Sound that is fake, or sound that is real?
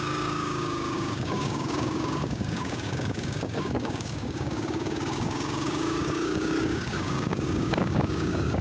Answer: fake